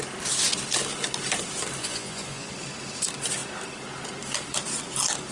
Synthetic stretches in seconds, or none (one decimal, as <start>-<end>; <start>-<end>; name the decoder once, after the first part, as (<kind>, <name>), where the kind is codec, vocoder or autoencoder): 1.8-2.5 (vocoder, Vocos)